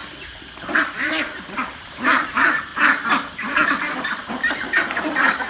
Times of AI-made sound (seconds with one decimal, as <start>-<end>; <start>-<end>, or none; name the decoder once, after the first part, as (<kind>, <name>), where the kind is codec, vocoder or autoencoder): 0.7-2.7 (vocoder, BigVGAN v2); 4.3-5.5